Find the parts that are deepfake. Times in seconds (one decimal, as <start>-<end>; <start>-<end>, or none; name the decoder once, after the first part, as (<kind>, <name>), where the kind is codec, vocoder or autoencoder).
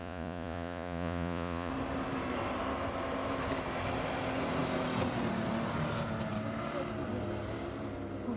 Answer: 0.0-1.7 (vocoder, Vocos)